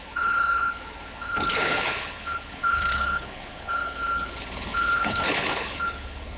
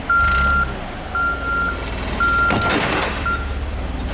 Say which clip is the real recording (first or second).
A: second